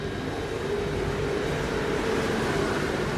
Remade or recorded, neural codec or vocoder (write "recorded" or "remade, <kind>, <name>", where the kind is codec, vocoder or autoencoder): recorded